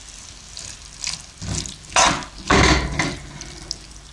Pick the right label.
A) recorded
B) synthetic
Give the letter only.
A